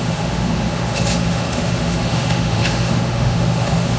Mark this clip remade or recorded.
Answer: remade